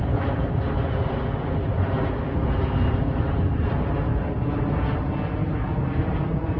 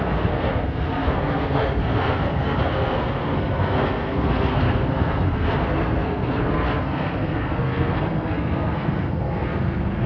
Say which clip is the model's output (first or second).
second